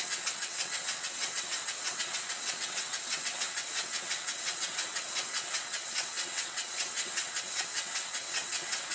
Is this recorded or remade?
remade